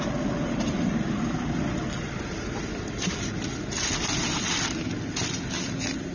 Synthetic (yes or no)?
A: no